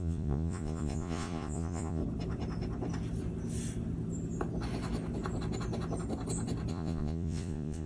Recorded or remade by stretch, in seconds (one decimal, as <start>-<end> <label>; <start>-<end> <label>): 0.0-2.0 remade; 2.0-6.7 recorded; 6.7-7.9 remade